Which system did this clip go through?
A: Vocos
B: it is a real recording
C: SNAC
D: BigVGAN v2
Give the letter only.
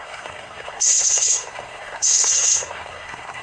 C